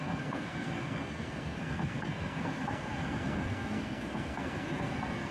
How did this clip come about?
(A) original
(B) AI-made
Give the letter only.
B